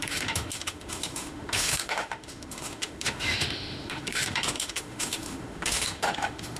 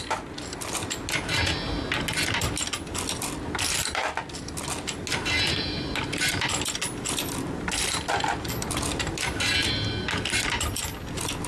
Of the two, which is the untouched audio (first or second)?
second